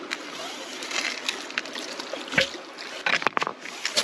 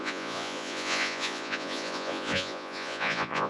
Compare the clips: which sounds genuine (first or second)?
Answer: first